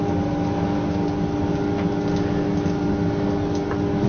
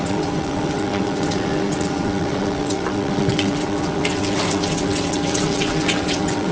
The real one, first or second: first